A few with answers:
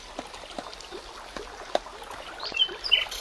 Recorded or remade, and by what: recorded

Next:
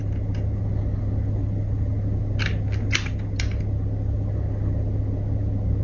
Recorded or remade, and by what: recorded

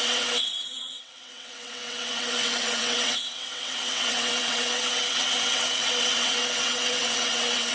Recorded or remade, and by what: remade, vocoder, WaveNeXt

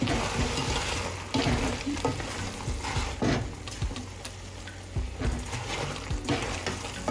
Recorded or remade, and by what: recorded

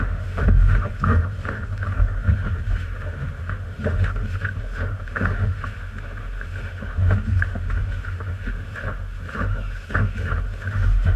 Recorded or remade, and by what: remade, autoencoder, DAC-VAE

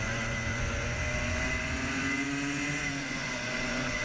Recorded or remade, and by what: remade, vocoder, Vocos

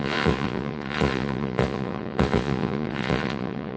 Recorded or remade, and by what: remade, vocoder, Vocos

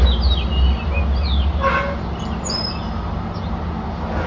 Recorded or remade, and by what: recorded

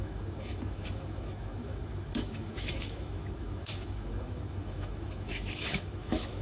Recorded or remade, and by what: remade, autoencoder, DAC-VAE